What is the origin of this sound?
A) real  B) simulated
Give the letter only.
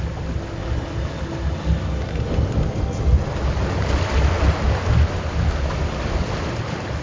A